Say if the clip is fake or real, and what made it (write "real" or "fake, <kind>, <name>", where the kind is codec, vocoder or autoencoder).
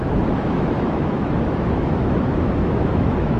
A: fake, autoencoder, DAC-VAE